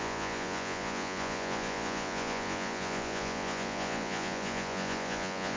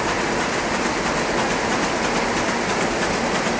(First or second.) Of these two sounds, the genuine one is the second